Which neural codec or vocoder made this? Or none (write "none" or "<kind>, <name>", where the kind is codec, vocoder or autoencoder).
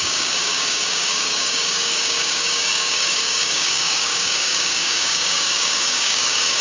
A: codec, DAC